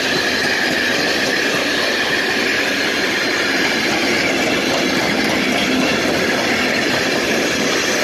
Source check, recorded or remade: recorded